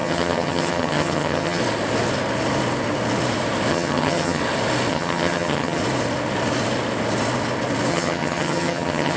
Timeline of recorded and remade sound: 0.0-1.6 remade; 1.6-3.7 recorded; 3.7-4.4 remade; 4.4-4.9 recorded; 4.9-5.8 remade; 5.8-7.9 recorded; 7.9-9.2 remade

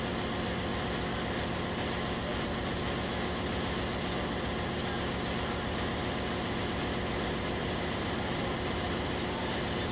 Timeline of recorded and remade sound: 0.0-7.6 recorded; 7.6-8.4 remade; 8.4-9.9 recorded